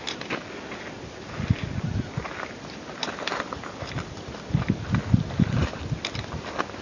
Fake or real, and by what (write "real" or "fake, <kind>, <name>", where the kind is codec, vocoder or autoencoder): real